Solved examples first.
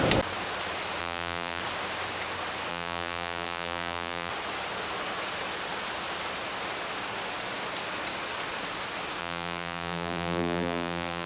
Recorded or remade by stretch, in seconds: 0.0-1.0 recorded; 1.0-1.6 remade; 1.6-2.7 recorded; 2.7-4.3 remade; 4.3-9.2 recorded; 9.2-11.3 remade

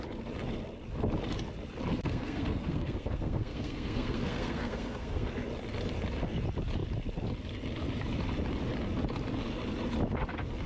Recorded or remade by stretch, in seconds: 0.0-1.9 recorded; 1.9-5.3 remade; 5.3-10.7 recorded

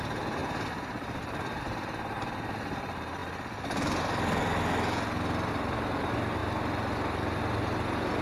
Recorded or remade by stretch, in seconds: 0.0-3.2 remade; 3.2-5.5 recorded; 5.5-6.4 remade; 6.4-8.2 recorded